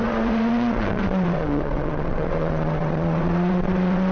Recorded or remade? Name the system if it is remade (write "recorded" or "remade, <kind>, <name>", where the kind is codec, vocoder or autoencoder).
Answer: remade, vocoder, WaveNeXt